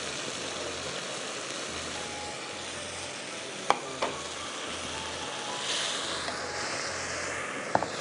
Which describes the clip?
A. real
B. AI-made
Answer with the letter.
A